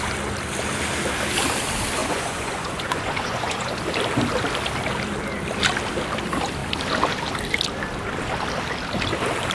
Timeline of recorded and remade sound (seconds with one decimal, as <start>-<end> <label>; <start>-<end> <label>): 0.0-2.0 recorded; 2.0-3.8 remade; 3.8-9.5 recorded